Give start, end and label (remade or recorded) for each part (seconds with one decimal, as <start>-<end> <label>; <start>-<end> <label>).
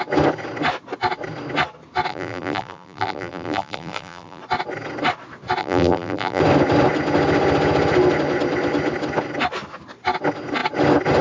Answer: 0.0-2.1 recorded; 2.1-4.4 remade; 4.4-5.6 recorded; 5.6-6.4 remade; 6.4-11.2 recorded